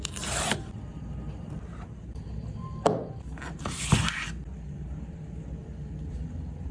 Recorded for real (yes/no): no